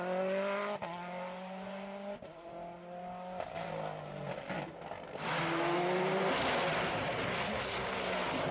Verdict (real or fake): real